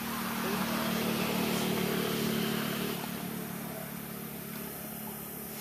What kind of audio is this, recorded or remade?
recorded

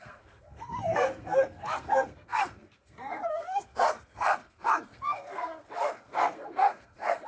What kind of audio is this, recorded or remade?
remade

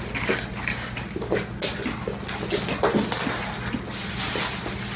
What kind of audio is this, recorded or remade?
recorded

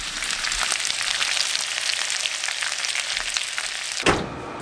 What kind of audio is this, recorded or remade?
recorded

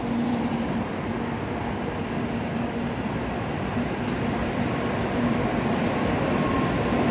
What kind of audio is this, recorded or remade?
remade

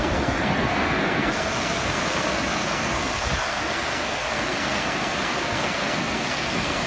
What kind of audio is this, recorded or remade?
remade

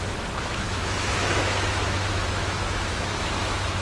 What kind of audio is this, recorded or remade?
remade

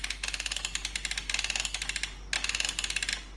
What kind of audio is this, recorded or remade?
recorded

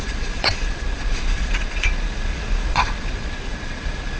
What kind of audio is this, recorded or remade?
remade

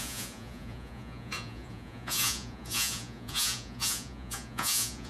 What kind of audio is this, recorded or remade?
remade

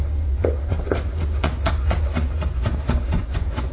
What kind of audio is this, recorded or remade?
remade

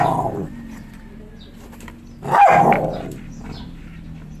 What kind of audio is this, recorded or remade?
recorded